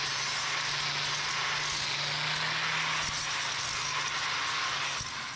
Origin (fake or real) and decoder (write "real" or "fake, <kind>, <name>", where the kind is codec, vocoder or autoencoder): real